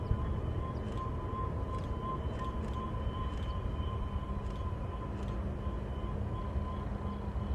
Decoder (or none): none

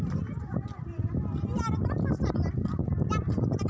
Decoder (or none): none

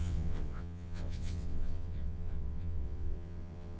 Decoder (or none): vocoder, WaveNeXt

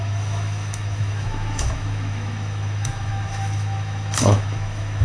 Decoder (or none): autoencoder, DAC-VAE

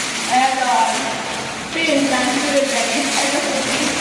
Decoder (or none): vocoder, BigVGAN v2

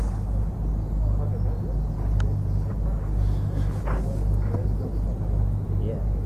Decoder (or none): none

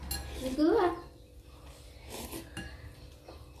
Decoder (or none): none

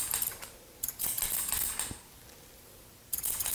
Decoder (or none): none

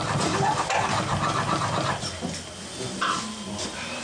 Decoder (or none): vocoder, BigVGAN v2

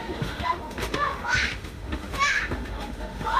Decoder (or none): autoencoder, DAC-VAE